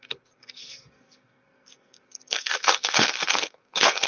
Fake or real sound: fake